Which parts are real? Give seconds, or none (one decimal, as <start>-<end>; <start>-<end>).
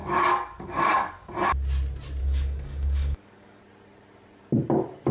1.3-2.2; 3.6-5.1